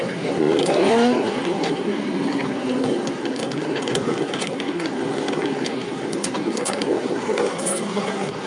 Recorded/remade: remade